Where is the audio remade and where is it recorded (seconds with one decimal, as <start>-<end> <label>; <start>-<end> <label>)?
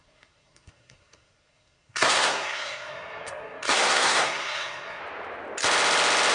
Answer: 0.0-5.0 remade; 5.0-6.3 recorded